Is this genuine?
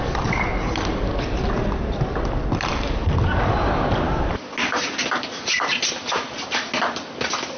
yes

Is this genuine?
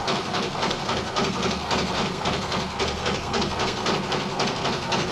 no